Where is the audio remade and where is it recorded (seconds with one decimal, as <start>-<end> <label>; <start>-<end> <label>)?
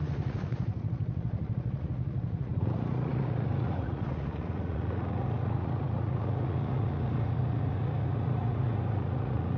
0.0-9.6 remade